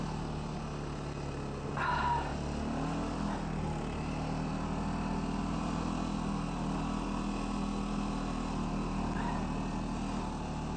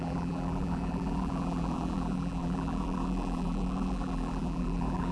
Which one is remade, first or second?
second